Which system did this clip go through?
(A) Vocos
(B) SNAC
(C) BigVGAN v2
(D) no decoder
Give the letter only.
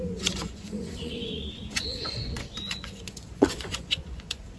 A